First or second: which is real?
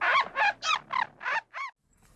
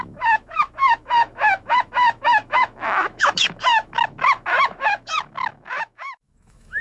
first